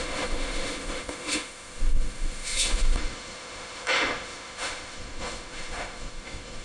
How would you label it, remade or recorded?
remade